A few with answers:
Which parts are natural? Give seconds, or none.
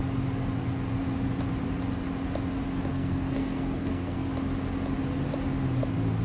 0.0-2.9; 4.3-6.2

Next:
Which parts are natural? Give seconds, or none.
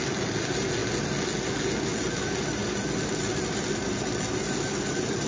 0.0-5.3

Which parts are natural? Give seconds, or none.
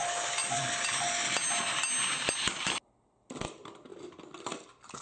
0.0-5.0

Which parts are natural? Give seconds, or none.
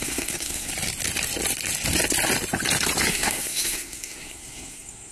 0.7-3.1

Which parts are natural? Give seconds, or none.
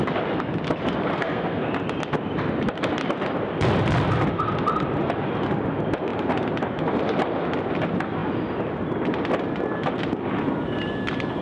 0.0-1.1; 1.7-11.4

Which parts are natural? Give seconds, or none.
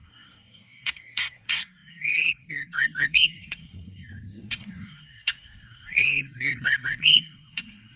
none